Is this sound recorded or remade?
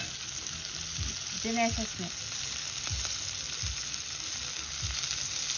recorded